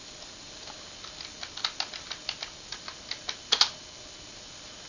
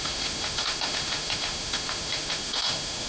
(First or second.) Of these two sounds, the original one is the first